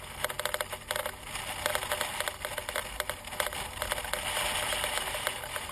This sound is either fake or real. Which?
real